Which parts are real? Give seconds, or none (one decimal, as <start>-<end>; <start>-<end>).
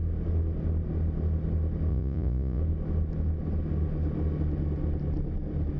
0.0-1.9; 2.6-5.8